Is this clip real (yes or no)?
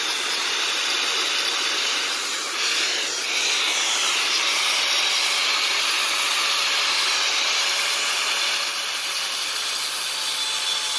yes